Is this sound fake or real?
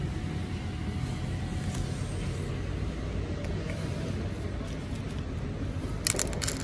real